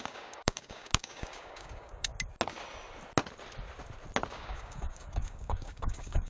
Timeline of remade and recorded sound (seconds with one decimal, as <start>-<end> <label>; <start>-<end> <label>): 0.0-2.1 remade; 2.1-4.3 recorded; 4.3-6.3 remade